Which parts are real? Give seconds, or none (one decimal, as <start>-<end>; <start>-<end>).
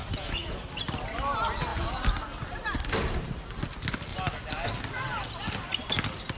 0.6-6.4